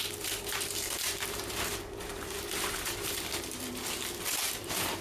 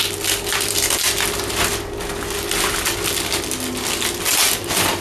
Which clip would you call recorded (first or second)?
second